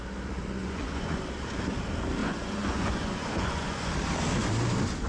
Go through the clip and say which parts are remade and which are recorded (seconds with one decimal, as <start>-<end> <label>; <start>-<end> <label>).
0.0-0.6 recorded; 0.6-1.2 remade; 1.2-2.2 recorded; 2.2-3.9 remade; 3.9-5.1 recorded